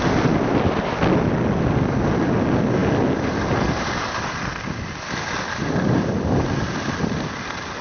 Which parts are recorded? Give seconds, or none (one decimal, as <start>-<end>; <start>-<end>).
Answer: 0.0-7.8